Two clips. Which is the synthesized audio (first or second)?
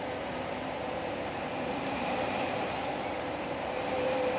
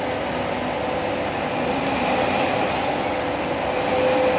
first